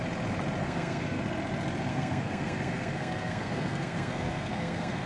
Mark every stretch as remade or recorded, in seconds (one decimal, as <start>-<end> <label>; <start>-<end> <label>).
0.0-0.6 recorded; 0.6-1.2 remade; 1.2-1.9 recorded; 1.9-5.1 remade